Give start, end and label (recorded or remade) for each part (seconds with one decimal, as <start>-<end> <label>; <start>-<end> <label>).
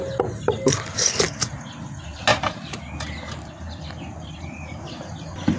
0.0-2.3 recorded; 2.3-4.8 remade; 4.8-5.6 recorded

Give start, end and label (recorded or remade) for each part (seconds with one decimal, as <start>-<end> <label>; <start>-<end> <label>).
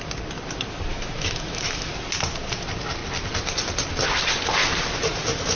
0.0-0.9 recorded; 0.9-1.9 remade; 1.9-5.6 recorded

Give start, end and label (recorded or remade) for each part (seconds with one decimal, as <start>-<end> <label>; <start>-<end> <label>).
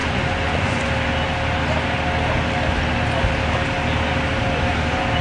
0.0-0.9 remade; 0.9-5.2 recorded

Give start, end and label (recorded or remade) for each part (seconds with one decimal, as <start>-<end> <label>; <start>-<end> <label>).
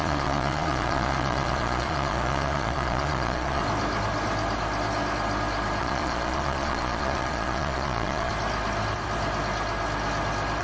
0.0-3.6 remade; 3.6-5.8 recorded; 5.8-8.3 remade; 8.3-10.6 recorded